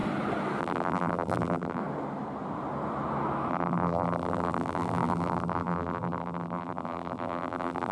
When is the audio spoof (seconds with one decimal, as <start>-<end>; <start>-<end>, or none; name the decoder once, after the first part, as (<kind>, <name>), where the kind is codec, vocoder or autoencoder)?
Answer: 0.6-1.8 (vocoder, BigVGAN v2); 3.5-7.9